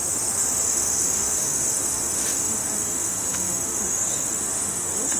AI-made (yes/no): yes